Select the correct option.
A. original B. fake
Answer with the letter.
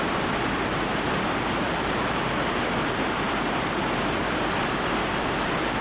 B